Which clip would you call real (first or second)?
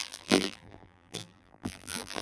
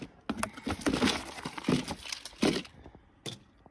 second